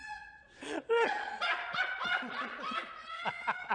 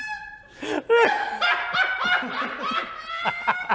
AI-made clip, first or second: first